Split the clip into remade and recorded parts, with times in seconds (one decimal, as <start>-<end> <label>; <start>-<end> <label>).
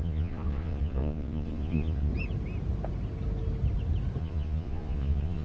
0.0-2.1 remade; 2.1-4.2 recorded; 4.2-5.4 remade